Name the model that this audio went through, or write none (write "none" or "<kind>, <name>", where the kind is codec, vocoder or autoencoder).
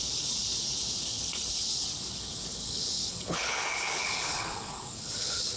codec, HILCodec